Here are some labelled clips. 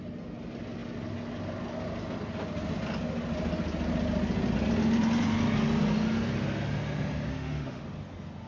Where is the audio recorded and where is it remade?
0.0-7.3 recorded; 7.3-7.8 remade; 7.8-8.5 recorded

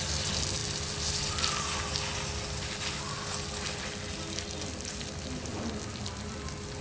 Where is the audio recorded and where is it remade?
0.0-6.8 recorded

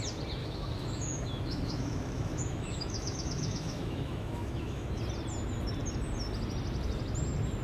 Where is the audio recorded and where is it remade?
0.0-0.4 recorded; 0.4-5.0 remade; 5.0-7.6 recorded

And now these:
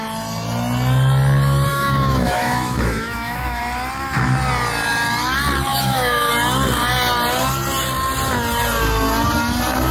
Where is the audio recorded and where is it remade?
0.0-1.7 recorded; 1.7-3.6 remade; 3.6-5.7 recorded; 5.7-6.3 remade; 6.3-9.9 recorded